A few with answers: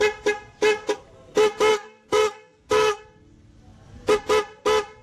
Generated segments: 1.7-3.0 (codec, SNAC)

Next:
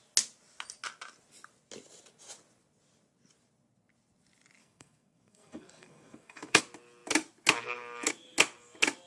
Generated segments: 4.6-6.6 (codec, SNAC)

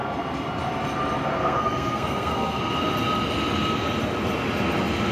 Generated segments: 1.4-2.6 (codec, SNAC)

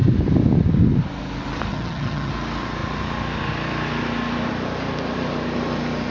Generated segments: 1.7-2.3 (vocoder, HiFi-GAN)

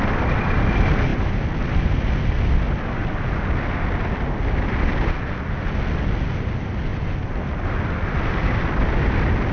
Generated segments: none